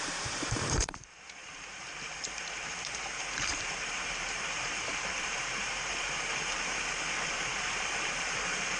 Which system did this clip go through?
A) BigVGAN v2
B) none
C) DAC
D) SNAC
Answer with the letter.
A